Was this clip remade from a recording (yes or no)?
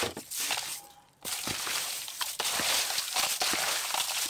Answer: no